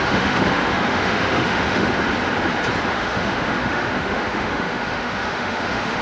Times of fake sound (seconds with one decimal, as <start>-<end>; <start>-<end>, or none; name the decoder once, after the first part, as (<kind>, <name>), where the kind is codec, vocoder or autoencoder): 0.0-1.9 (autoencoder, DAC-VAE); 2.9-6.0